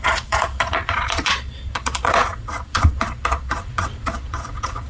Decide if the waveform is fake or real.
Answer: fake